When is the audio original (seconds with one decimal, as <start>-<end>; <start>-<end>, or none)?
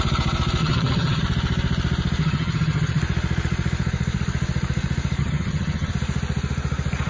0.0-0.6; 1.2-2.2; 3.0-5.2; 5.9-7.1